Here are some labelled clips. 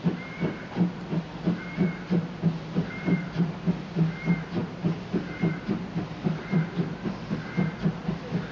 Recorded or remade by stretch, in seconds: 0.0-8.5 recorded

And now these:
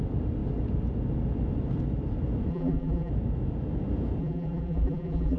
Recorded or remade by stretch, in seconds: 0.0-2.5 recorded; 2.5-3.1 remade; 3.1-4.2 recorded; 4.2-5.4 remade

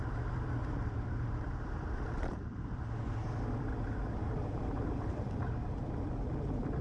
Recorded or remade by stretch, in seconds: 0.0-2.9 remade; 2.9-4.2 recorded; 4.2-6.1 remade; 6.1-6.8 recorded